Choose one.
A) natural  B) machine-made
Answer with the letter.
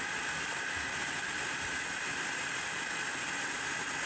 A